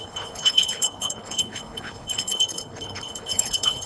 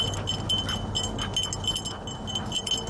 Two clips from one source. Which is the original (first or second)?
second